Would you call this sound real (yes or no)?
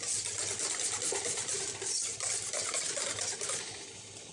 yes